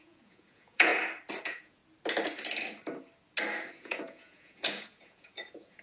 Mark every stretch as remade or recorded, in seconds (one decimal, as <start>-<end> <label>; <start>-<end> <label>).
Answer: 0.0-0.9 remade; 0.9-1.4 recorded; 1.4-1.8 remade; 1.8-3.7 recorded; 3.7-5.8 remade